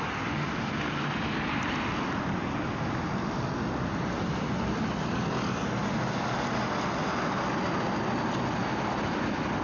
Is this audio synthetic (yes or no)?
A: no